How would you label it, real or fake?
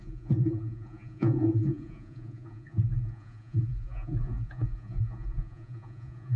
fake